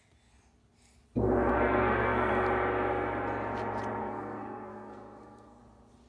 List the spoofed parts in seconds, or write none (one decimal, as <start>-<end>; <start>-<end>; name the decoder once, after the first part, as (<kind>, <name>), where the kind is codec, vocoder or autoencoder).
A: 1.5-2.3 (codec, SNAC); 4.0-5.6